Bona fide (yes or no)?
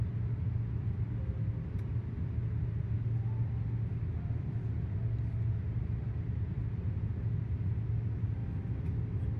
yes